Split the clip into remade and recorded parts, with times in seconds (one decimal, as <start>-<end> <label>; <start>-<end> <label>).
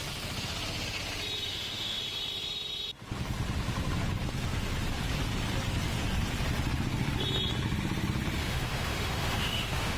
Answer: 0.0-1.5 recorded; 1.5-2.0 remade; 2.0-8.4 recorded; 8.4-10.0 remade